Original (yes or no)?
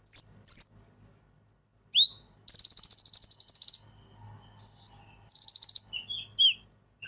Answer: yes